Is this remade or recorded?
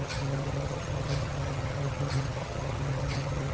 remade